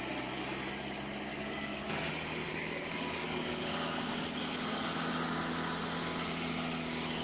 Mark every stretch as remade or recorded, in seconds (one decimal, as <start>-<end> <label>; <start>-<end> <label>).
0.0-1.3 recorded; 1.3-2.1 remade; 2.1-2.5 recorded; 2.5-3.6 remade; 3.6-7.2 recorded